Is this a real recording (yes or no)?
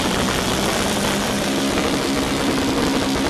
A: yes